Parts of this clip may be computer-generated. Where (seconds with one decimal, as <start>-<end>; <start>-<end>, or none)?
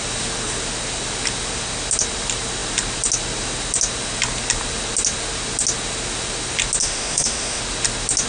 6.8-7.6